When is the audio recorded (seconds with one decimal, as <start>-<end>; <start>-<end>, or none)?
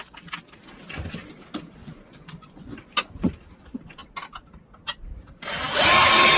0.0-0.8; 1.3-1.8; 3.3-6.4